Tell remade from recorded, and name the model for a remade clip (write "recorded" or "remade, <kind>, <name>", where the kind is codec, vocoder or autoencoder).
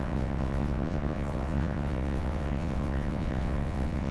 remade, vocoder, WaveNeXt